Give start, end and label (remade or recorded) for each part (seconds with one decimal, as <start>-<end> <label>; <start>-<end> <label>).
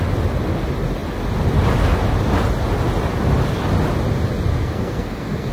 0.0-4.5 recorded; 4.5-5.5 remade